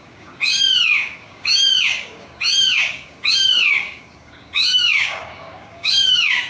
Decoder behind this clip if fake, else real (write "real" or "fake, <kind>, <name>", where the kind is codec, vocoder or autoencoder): fake, codec, DAC